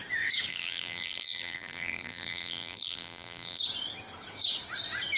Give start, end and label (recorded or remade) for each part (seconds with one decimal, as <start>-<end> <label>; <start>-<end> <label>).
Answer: 0.0-0.5 recorded; 0.5-3.6 remade; 3.6-5.2 recorded